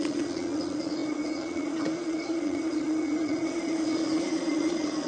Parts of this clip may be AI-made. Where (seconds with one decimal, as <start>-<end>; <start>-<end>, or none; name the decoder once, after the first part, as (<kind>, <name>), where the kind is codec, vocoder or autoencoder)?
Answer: 0.0-5.1 (vocoder, Vocos)